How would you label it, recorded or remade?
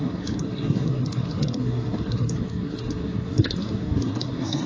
remade